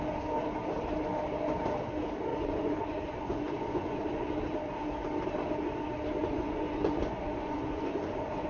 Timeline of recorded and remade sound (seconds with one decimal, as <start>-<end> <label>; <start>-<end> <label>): 0.0-2.3 recorded; 2.3-4.0 remade; 4.0-6.2 recorded; 6.2-8.5 remade